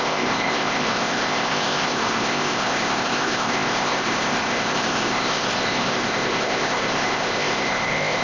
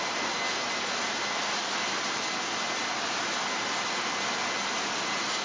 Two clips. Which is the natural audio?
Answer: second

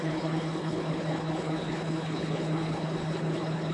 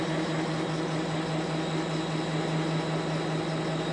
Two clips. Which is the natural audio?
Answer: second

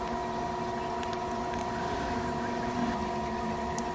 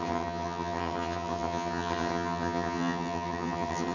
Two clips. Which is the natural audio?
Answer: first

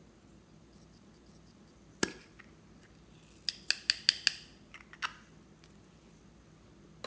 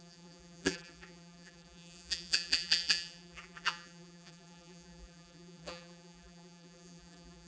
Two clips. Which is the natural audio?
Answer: first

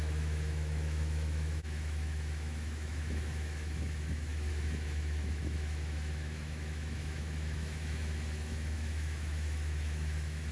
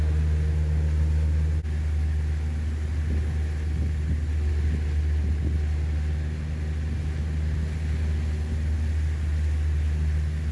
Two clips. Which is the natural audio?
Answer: second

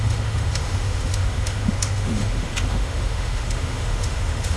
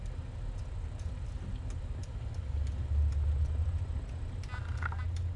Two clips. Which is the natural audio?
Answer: second